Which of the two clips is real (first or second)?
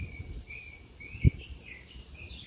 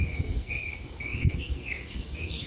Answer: first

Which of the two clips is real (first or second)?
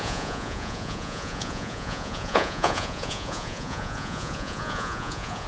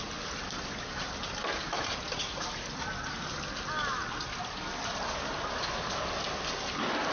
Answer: second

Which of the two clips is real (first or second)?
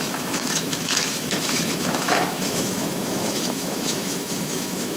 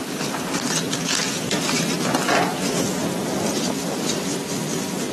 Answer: second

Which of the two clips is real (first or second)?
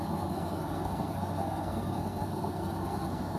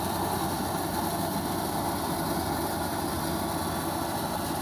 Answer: second